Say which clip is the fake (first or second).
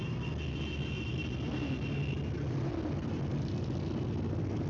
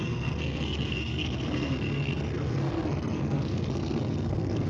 second